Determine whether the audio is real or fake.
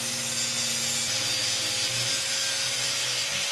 real